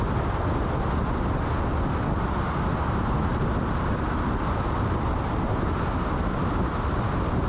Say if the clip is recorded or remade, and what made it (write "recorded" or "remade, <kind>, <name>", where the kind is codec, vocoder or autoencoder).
recorded